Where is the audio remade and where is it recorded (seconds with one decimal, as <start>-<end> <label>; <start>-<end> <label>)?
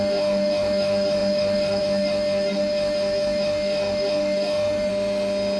0.0-4.9 remade; 4.9-5.6 recorded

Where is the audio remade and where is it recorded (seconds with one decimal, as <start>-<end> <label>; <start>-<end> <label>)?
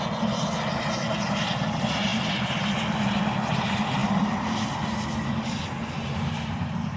0.0-7.0 recorded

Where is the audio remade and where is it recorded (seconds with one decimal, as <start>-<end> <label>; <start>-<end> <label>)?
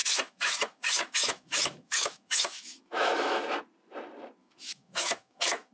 0.0-3.4 remade; 3.4-4.4 recorded; 4.4-5.7 remade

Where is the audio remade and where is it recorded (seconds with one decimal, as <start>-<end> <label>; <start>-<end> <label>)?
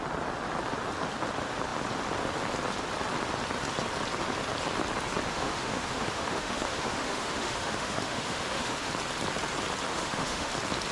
0.0-5.3 recorded; 5.3-8.9 remade; 8.9-9.9 recorded; 9.9-10.5 remade; 10.5-10.9 recorded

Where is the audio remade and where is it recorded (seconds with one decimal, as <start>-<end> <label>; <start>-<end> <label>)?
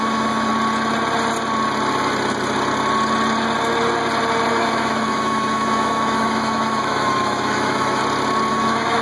0.0-0.5 remade; 0.5-4.5 recorded; 4.5-8.0 remade; 8.0-8.5 recorded; 8.5-9.0 remade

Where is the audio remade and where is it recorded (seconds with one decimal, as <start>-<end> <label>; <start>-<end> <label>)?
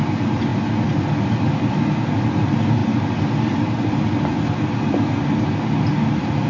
0.0-6.5 recorded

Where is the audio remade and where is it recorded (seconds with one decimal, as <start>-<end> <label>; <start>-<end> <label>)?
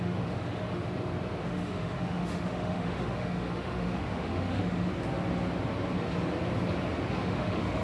0.0-0.9 remade; 0.9-1.4 recorded; 1.4-4.9 remade; 4.9-7.1 recorded; 7.1-7.8 remade